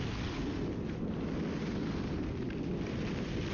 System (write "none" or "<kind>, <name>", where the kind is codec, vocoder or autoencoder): none